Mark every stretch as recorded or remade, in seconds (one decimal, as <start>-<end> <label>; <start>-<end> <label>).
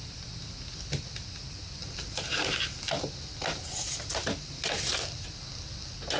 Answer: 0.0-6.2 recorded